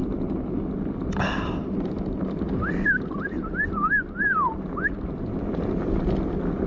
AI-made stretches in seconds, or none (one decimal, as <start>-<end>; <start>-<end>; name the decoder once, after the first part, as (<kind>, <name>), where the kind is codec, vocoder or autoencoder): none